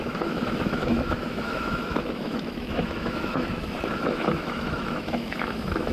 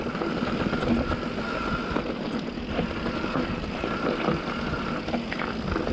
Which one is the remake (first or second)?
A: first